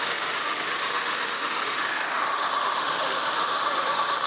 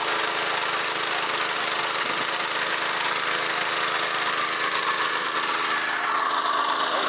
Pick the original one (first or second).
second